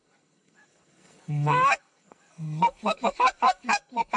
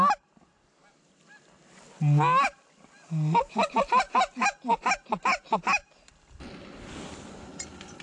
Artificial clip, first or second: first